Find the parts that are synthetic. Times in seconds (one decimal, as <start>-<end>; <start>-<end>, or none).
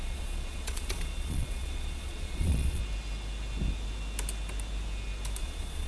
0.0-2.8; 5.4-5.9